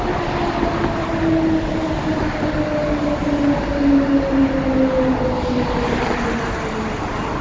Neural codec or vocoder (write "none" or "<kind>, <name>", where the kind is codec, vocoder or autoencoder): none